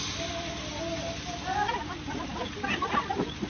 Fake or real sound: real